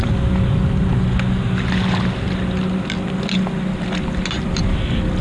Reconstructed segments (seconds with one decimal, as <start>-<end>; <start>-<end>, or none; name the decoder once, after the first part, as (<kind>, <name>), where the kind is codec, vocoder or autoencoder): none